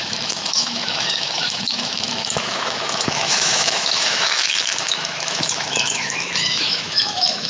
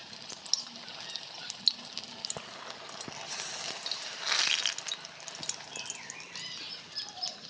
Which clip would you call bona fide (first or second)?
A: second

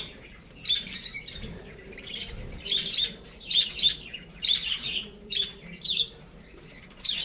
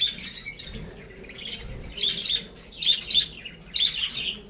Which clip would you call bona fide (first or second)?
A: second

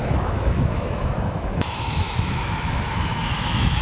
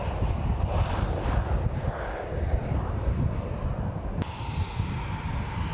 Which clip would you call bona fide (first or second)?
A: second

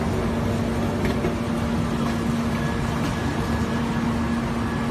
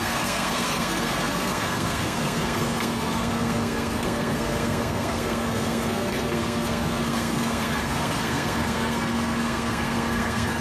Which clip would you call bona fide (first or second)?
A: first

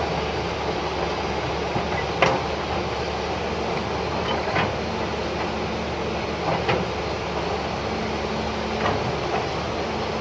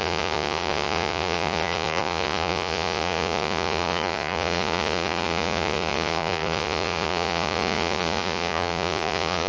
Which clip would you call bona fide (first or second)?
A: first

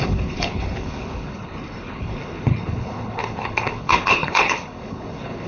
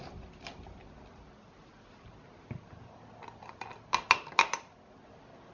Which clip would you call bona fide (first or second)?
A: second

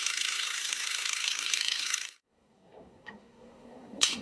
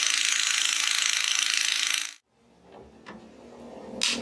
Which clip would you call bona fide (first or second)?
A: second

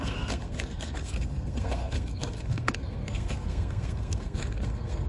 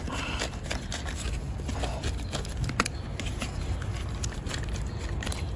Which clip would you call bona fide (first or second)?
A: second